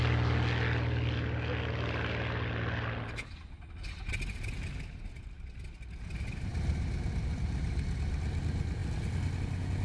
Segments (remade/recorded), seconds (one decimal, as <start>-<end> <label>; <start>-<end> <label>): 0.0-9.8 recorded